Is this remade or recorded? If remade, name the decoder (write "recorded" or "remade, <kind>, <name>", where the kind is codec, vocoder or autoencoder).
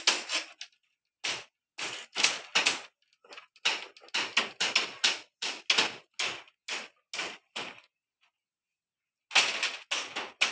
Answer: recorded